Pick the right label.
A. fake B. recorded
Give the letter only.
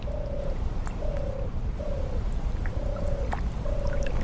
B